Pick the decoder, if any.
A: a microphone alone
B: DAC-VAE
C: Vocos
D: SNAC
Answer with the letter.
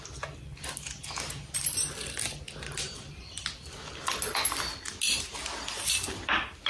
A